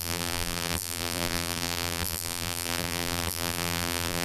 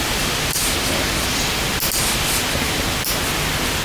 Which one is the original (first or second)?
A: second